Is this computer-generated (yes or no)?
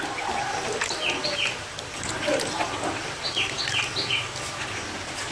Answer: no